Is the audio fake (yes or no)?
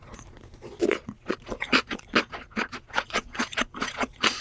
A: yes